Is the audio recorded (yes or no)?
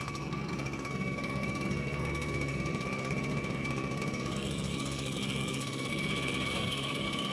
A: no